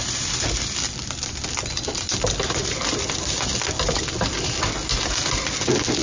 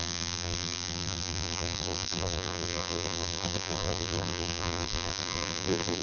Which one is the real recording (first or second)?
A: first